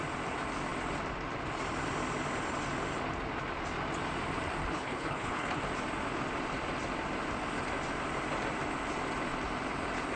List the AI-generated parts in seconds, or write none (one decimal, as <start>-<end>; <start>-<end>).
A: 4.6-5.6